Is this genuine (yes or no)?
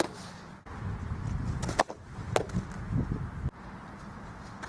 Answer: yes